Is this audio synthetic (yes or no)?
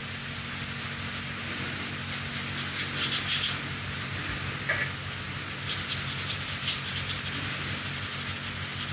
no